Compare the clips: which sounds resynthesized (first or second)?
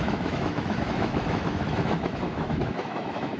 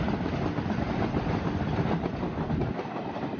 first